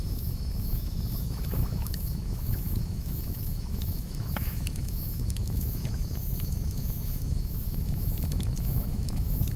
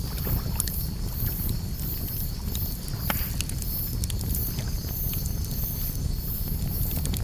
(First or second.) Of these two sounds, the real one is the second